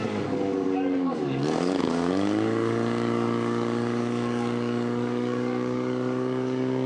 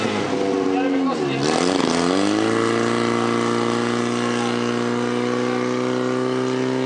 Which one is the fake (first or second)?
first